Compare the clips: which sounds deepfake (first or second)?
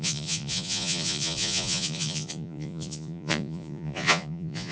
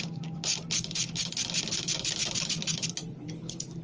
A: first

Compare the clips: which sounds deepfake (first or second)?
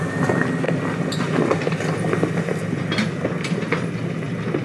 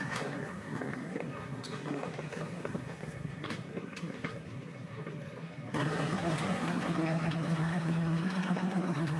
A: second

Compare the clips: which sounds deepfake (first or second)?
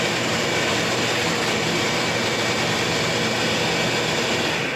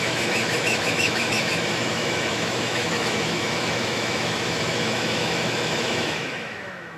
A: second